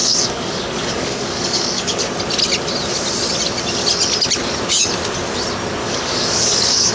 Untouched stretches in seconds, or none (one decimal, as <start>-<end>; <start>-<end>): 2.1-5.8